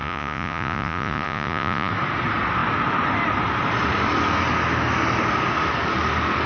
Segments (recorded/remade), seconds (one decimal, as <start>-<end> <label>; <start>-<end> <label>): 0.0-1.9 remade; 1.9-6.5 recorded